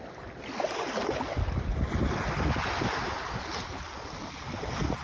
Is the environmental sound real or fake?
real